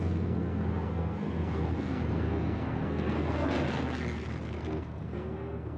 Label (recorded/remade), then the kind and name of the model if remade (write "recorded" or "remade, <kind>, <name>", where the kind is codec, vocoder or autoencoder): remade, codec, SNAC